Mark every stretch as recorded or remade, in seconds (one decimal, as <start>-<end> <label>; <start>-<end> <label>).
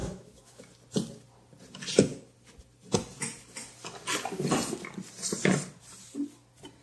0.0-0.6 remade; 0.6-6.8 recorded